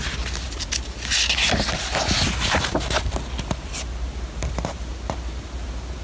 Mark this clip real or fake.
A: real